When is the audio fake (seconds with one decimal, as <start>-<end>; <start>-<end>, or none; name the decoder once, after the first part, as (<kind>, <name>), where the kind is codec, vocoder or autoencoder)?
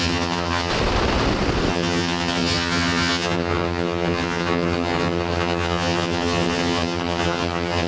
0.0-0.7 (vocoder, HiFi-GAN); 1.7-7.9